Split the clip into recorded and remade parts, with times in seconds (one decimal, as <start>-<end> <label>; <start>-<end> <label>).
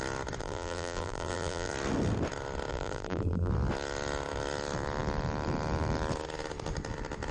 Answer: 0.0-0.4 recorded; 0.4-1.7 remade; 1.7-2.7 recorded; 2.7-3.5 remade; 3.5-7.3 recorded